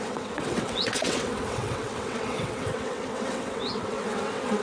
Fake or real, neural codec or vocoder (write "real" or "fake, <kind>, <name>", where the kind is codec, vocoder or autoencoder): fake, vocoder, WaveNeXt